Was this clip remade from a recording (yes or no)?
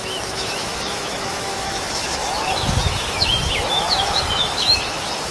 yes